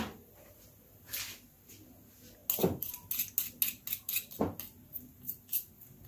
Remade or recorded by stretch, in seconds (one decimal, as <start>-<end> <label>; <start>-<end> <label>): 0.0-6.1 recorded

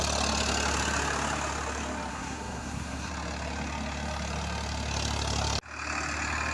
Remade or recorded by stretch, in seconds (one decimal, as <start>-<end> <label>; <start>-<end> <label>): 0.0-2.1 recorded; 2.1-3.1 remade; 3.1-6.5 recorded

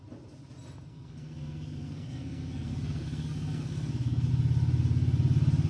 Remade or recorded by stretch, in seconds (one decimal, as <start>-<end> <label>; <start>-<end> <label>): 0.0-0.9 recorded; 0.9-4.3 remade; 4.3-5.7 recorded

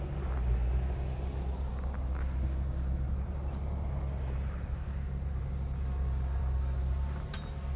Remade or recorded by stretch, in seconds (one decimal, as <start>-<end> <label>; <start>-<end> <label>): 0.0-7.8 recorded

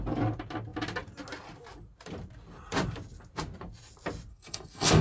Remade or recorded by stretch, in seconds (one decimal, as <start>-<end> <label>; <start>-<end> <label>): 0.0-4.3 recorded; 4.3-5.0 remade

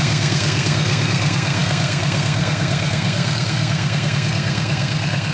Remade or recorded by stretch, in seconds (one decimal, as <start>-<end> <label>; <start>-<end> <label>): 0.0-5.3 remade

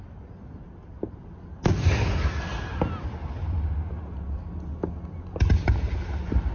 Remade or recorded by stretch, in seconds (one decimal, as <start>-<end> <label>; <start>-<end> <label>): 0.0-6.5 recorded